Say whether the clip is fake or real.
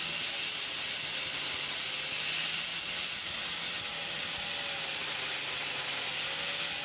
real